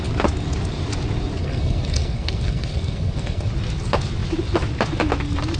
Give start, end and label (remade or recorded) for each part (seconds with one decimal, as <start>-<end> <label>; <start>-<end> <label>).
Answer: 0.0-1.4 recorded; 1.4-3.5 remade; 3.5-5.6 recorded